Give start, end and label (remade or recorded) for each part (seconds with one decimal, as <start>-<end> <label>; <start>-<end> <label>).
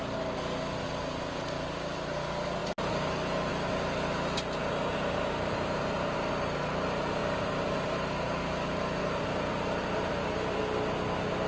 0.0-4.6 recorded; 4.6-6.3 remade; 6.3-7.2 recorded; 7.2-10.6 remade; 10.6-11.5 recorded